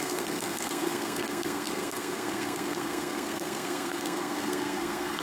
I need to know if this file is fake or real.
fake